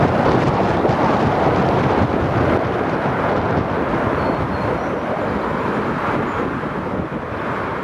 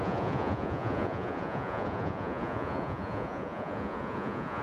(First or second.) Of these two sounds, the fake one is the second